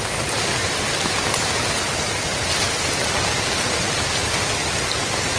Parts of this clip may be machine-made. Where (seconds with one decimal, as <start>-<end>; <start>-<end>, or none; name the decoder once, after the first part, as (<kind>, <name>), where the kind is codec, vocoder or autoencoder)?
2.3-4.4 (vocoder, BigVGAN v2)